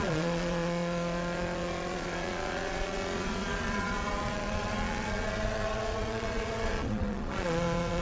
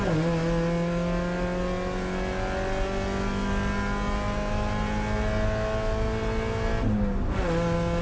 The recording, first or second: second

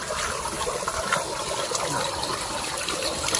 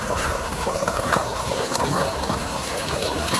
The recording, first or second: first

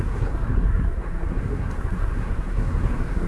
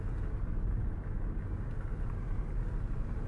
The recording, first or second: second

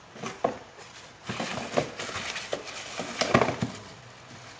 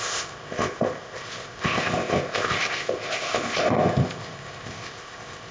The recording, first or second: first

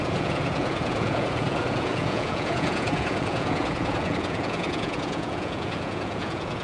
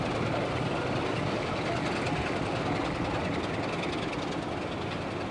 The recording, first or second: second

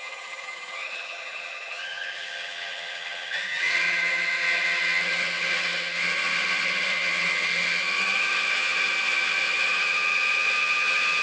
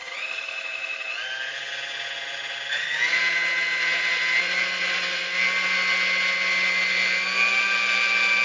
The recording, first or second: second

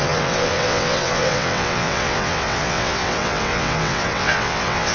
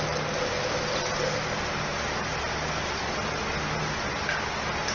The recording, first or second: second